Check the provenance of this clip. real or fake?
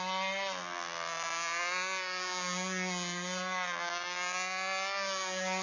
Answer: real